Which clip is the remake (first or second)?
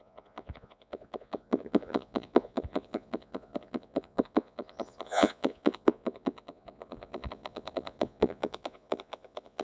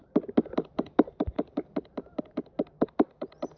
first